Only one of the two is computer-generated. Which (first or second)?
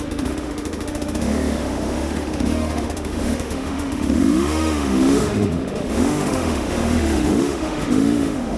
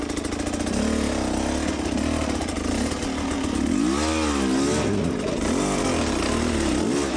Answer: first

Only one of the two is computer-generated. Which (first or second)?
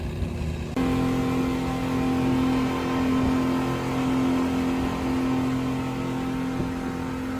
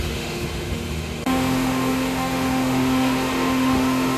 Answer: second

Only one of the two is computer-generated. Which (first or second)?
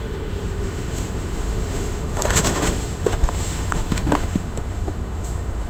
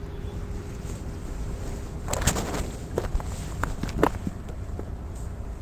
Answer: first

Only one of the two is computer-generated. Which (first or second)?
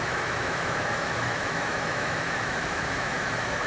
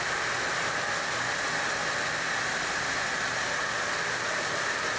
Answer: first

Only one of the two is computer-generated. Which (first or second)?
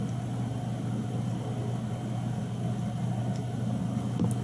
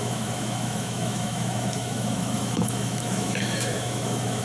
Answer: second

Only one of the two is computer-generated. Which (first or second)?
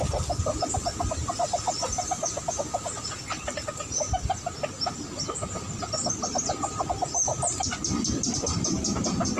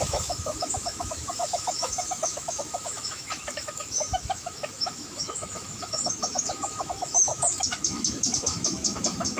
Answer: second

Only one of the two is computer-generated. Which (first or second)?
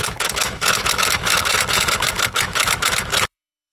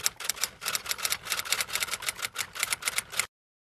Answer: first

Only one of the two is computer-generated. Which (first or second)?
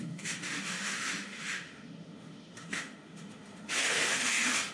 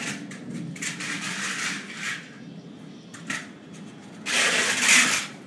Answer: first